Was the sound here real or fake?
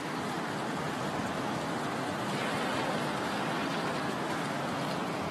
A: real